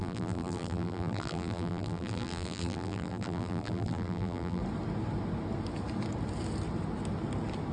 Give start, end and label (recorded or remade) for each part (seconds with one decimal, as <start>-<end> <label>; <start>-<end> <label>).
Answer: 0.0-4.6 remade; 4.6-7.7 recorded